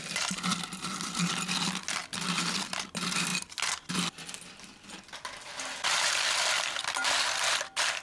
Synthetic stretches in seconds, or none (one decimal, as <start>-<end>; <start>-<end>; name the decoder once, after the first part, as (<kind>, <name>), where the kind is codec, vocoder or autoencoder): none